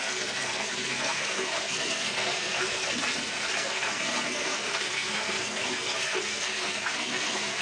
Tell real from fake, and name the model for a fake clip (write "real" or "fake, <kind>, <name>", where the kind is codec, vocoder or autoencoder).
fake, codec, SNAC